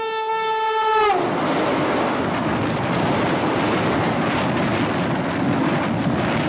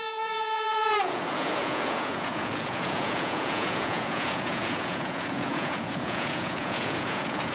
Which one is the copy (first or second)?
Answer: second